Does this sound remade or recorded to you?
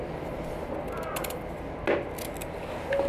recorded